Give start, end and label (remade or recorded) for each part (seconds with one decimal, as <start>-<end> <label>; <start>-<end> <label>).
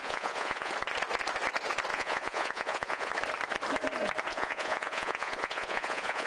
0.0-0.7 remade; 0.7-1.9 recorded; 1.9-3.1 remade; 3.1-4.3 recorded; 4.3-6.3 remade